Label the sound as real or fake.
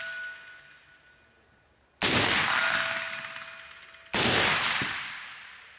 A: real